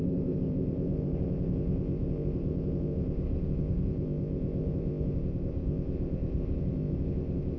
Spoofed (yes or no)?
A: yes